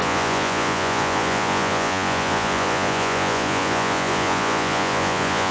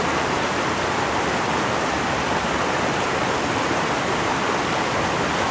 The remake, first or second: first